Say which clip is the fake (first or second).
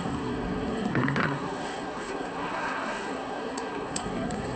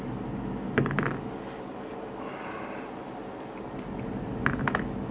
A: first